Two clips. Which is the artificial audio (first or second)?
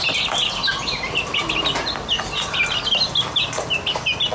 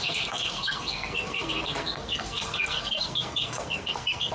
second